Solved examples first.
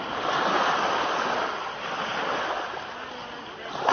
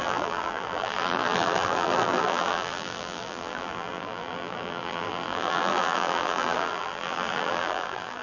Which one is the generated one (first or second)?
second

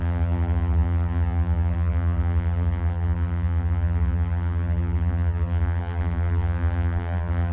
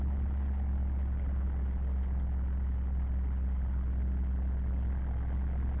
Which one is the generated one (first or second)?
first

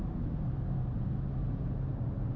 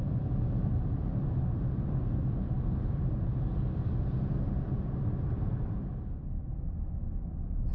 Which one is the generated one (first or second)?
second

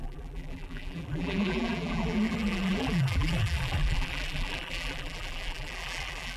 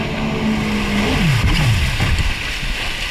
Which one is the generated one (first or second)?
first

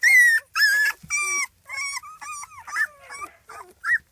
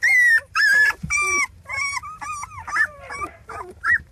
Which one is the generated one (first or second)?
second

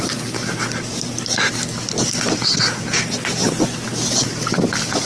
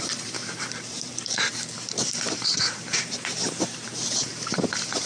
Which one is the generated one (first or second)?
second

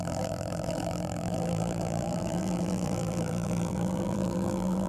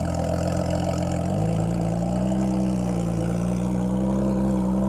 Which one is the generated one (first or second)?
first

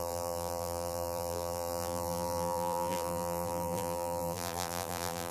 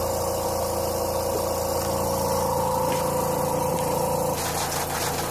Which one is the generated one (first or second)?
first